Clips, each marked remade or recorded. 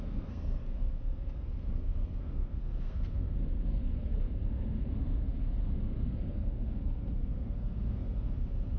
remade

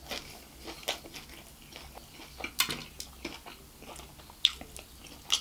recorded